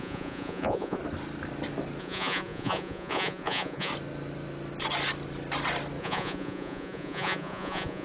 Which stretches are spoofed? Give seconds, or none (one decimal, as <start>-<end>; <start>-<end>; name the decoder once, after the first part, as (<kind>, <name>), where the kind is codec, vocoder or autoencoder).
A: 0.0-1.0 (vocoder, Vocos); 2.0-3.9; 6.0-8.0